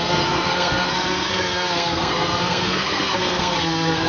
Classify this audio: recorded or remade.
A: remade